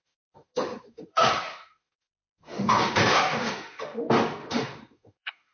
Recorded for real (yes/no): no